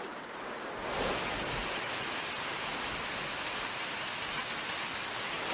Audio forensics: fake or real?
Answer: real